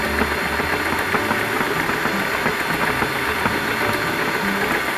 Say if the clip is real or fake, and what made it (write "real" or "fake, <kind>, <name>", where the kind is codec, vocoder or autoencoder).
real